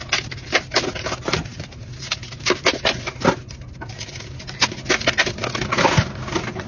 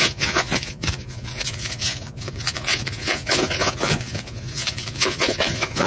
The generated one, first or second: second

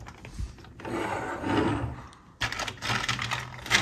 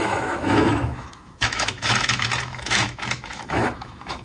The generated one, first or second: second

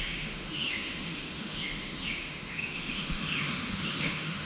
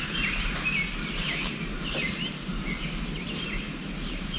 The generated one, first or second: first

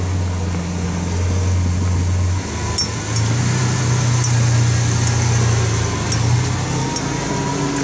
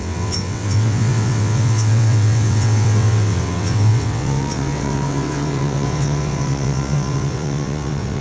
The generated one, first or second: second